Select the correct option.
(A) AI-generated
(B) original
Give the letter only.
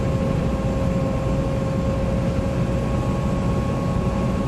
B